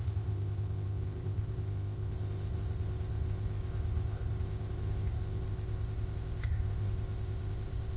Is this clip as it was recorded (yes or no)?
no